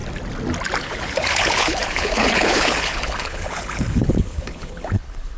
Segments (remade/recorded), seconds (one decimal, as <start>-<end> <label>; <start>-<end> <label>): 0.0-0.8 recorded; 0.8-5.4 remade

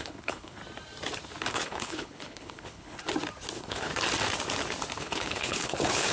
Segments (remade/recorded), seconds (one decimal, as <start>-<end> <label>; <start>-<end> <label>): 0.0-0.6 remade; 0.6-1.5 recorded; 1.5-3.0 remade; 3.0-3.5 recorded; 3.5-3.9 remade; 3.9-5.0 recorded; 5.0-6.1 remade

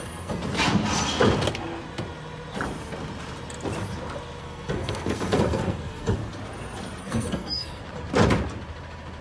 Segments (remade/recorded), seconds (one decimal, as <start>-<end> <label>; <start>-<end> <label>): 0.0-0.4 remade; 0.4-4.4 recorded; 4.4-6.2 remade; 6.2-7.0 recorded; 7.0-7.8 remade; 7.8-9.2 recorded

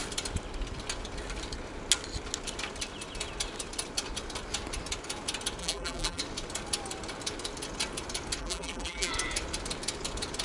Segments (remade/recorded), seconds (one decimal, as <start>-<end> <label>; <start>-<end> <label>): 0.0-5.6 recorded; 5.6-6.2 remade; 6.2-8.4 recorded; 8.4-9.1 remade; 9.1-10.4 recorded

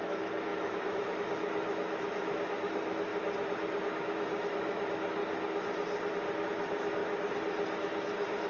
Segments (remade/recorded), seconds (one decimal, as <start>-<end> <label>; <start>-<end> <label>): 0.0-3.1 remade; 3.1-3.9 recorded; 3.9-5.2 remade; 5.2-6.5 recorded; 6.5-7.0 remade; 7.0-8.5 recorded

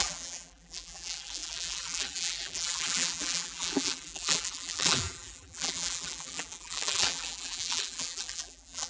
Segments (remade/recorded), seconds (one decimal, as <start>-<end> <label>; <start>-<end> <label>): 0.0-8.9 remade